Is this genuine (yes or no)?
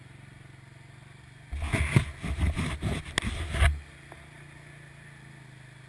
yes